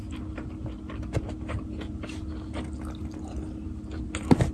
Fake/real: real